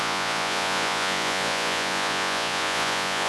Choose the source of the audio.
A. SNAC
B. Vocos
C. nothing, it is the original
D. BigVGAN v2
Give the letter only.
B